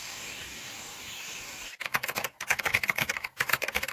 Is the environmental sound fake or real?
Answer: fake